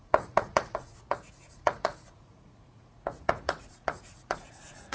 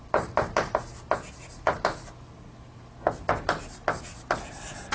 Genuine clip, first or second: second